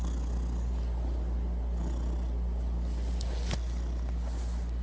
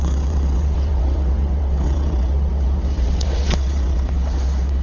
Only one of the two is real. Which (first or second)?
first